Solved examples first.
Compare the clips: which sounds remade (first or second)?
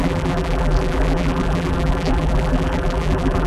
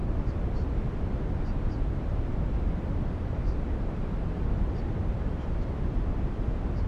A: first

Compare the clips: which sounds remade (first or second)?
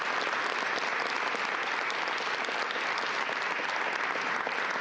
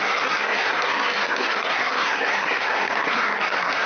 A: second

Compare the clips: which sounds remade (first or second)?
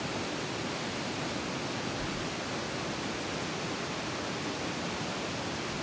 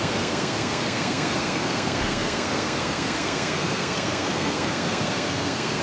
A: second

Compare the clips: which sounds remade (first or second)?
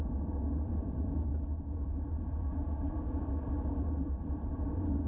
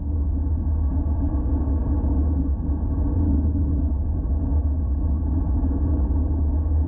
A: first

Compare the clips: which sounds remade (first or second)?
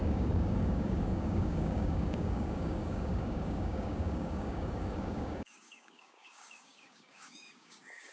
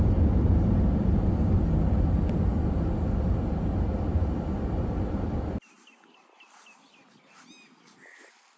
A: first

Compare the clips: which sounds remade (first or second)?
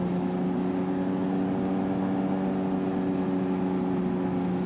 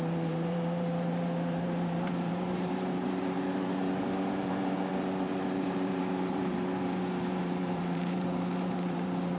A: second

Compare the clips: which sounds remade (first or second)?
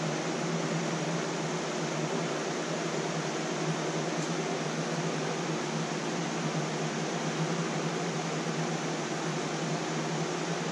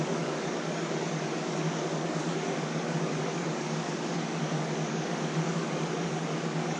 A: second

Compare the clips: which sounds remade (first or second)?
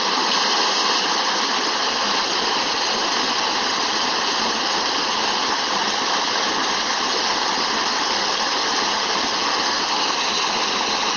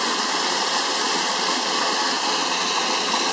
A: second